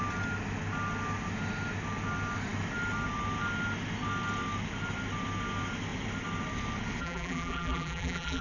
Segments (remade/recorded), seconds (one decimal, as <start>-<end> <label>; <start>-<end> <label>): 0.0-7.0 recorded; 7.0-8.4 remade